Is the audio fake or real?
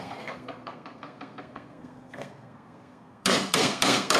fake